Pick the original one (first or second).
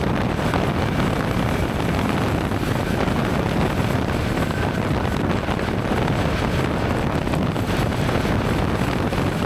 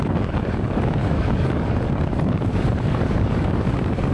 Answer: first